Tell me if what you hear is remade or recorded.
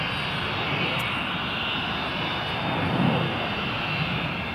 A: recorded